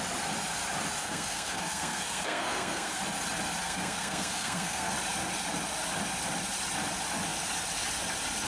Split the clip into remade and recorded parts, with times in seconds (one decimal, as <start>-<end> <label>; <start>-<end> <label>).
0.0-1.0 recorded; 1.0-3.0 remade; 3.0-3.6 recorded; 3.6-4.9 remade; 4.9-8.5 recorded

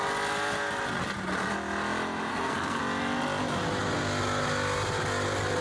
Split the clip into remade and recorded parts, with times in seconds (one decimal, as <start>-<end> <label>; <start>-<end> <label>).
0.0-2.3 recorded; 2.3-2.8 remade; 2.8-5.6 recorded